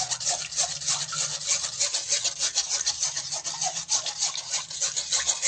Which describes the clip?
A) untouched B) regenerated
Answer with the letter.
A